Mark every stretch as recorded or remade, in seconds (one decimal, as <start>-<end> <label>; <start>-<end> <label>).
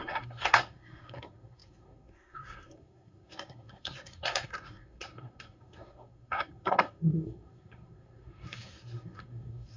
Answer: 0.0-9.8 remade